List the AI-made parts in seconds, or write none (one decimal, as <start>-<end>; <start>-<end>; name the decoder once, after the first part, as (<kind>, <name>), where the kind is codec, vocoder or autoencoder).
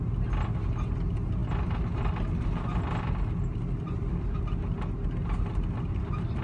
none